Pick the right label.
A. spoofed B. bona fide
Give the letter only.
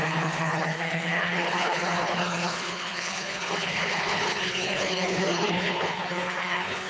A